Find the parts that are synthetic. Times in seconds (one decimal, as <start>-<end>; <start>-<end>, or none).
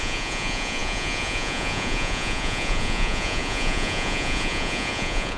0.0-5.4